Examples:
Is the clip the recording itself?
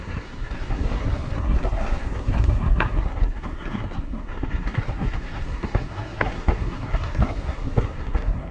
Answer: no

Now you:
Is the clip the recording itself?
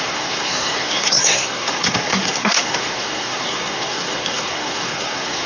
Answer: no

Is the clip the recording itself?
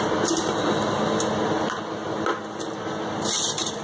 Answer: yes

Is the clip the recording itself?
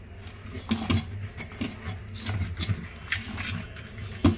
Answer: yes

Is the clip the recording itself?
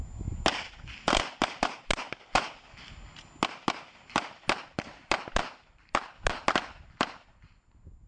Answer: yes